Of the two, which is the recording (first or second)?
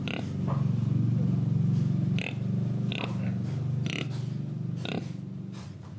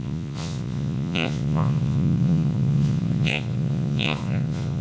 first